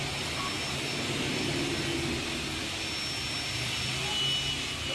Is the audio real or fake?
real